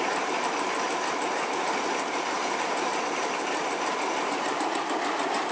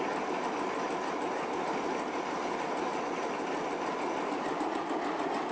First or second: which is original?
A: second